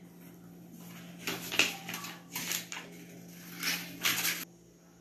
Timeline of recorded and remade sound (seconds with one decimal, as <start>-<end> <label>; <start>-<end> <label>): 0.0-5.0 recorded